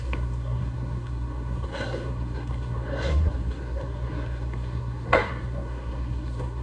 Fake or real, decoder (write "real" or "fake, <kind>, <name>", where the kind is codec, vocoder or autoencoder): fake, codec, SNAC